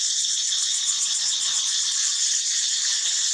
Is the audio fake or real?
real